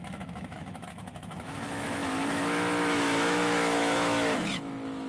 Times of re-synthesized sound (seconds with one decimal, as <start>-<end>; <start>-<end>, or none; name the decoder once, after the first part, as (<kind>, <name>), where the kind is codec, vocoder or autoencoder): 0.0-5.1 (autoencoder, DAC-VAE)